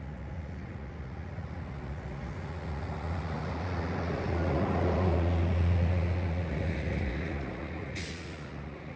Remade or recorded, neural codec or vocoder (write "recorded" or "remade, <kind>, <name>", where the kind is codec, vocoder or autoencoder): remade, vocoder, Vocos